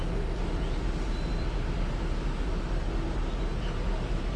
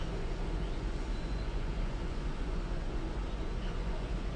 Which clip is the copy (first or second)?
second